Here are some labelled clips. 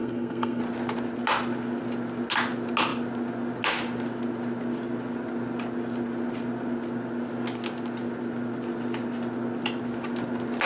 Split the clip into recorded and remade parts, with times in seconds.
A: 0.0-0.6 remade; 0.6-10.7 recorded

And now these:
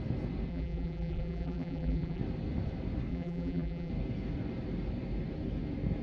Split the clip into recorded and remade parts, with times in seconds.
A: 0.0-0.5 recorded; 0.5-2.2 remade; 2.2-3.1 recorded; 3.1-3.9 remade; 3.9-6.0 recorded

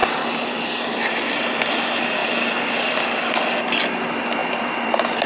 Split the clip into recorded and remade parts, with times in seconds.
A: 0.0-1.7 remade; 1.7-4.4 recorded; 4.4-5.3 remade

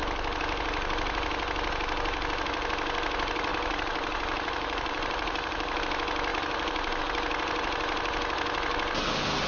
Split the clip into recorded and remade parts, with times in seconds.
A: 0.0-3.5 recorded; 3.5-5.8 remade; 5.8-6.3 recorded; 6.3-7.0 remade; 7.0-9.5 recorded

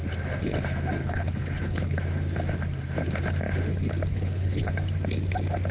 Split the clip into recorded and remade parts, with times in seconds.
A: 0.0-1.0 recorded; 1.0-2.0 remade; 2.0-4.1 recorded; 4.1-4.7 remade; 4.7-5.7 recorded

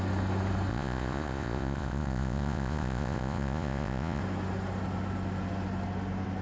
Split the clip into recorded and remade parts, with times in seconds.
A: 0.0-0.7 recorded; 0.7-4.2 remade; 4.2-6.4 recorded

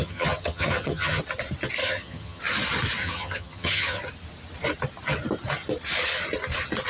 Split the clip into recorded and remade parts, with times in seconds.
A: 0.0-1.2 remade; 1.2-1.8 recorded; 1.8-2.4 remade; 2.4-3.0 recorded; 3.0-4.0 remade; 4.0-6.9 recorded